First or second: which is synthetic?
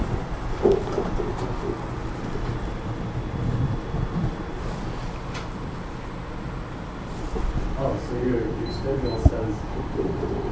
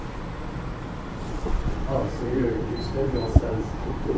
second